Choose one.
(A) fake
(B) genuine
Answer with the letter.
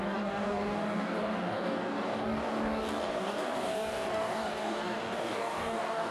A